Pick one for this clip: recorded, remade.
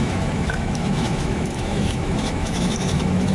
remade